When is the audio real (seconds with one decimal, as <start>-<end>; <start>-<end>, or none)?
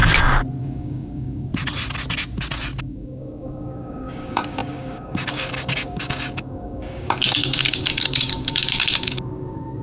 0.0-0.6; 1.5-2.8